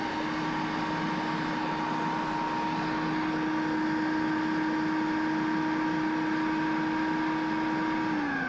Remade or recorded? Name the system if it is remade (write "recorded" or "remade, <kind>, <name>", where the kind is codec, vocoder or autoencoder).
recorded